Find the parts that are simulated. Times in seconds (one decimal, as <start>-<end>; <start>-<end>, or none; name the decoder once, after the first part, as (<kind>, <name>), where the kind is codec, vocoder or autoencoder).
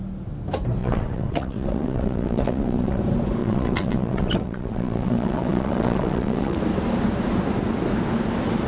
0.8-3.0 (vocoder, WaveNeXt); 3.4-6.6